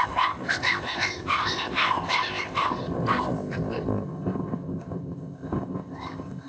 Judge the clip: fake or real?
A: fake